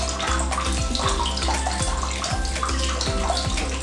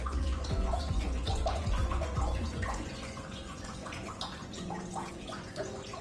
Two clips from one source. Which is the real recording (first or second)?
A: first